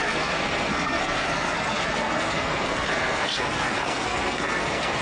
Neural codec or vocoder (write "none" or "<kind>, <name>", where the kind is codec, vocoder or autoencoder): codec, SNAC